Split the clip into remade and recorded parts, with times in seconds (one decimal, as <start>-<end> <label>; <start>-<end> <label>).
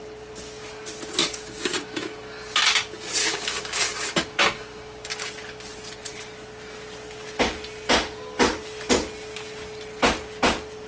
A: 0.0-1.2 recorded; 1.2-2.2 remade; 2.2-3.2 recorded; 3.2-5.3 remade; 5.3-10.9 recorded